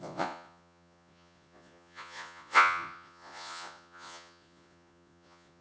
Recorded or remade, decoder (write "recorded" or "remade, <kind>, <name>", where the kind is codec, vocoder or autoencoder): remade, vocoder, Vocos